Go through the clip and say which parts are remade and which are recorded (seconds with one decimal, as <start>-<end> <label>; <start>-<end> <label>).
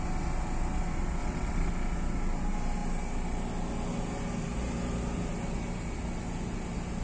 0.0-1.2 recorded; 1.2-1.7 remade; 1.7-7.0 recorded